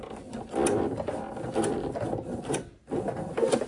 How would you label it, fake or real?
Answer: real